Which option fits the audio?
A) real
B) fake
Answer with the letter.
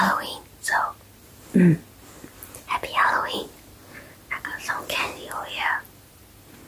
A